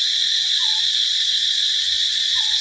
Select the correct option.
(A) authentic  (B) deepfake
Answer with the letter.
B